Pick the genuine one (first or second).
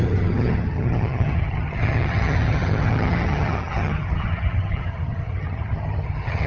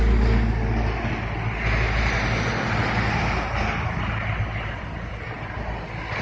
second